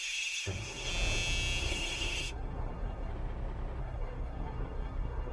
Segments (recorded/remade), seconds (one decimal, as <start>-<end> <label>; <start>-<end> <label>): 0.0-0.9 remade; 0.9-1.6 recorded; 1.6-3.1 remade; 3.1-3.8 recorded; 3.8-5.3 remade